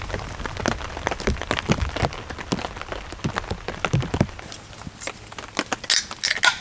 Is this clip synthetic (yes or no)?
no